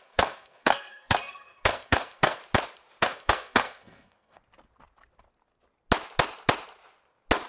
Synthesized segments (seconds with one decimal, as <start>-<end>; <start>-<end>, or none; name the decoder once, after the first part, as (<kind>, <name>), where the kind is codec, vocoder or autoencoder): 0.0-2.4 (codec, SNAC); 3.0-4.4